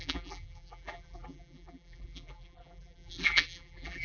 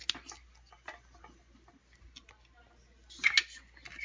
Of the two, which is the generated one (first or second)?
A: first